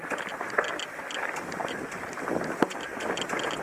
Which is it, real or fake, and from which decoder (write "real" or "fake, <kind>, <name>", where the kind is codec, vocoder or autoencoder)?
real